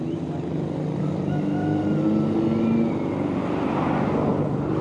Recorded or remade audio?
recorded